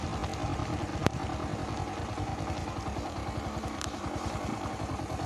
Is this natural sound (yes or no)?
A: yes